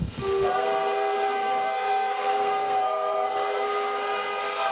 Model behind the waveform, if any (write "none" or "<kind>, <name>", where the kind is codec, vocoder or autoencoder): codec, SNAC